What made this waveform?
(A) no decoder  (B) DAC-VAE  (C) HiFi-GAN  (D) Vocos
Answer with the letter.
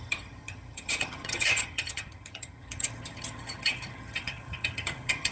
C